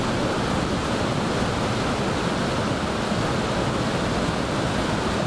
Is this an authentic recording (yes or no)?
yes